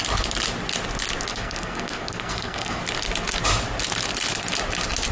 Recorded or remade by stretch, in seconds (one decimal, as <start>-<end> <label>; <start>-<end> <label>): 0.0-1.3 recorded; 1.3-2.8 remade; 2.8-5.1 recorded